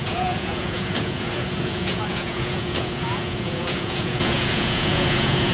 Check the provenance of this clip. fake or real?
fake